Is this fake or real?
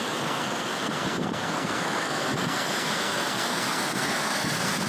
fake